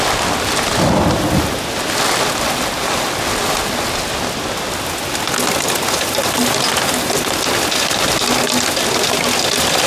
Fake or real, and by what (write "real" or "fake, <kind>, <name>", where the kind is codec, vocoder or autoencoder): real